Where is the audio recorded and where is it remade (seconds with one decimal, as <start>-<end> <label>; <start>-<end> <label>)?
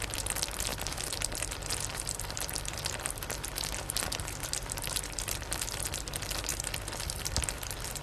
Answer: 0.0-8.0 recorded